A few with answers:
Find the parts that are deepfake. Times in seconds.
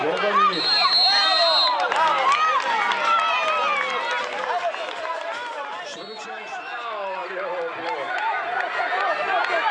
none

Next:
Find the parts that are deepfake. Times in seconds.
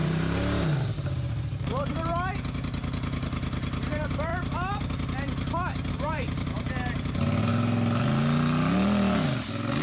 0.0-2.1 (vocoder, BigVGAN v2); 3.9-4.3; 5.9-7.5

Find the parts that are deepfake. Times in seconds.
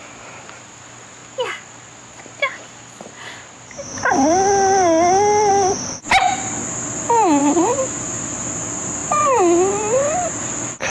7.4-8.5 (vocoder, BigVGAN v2)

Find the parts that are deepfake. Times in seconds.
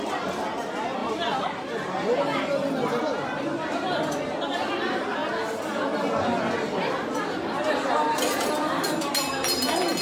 1.0-2.2 (vocoder, BigVGAN v2)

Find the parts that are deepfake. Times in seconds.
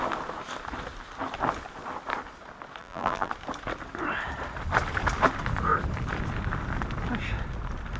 2.8-3.3 (vocoder, BigVGAN v2)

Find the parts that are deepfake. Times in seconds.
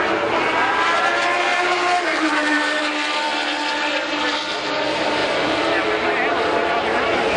1.5-2.9 (vocoder, BigVGAN v2); 5.2-5.7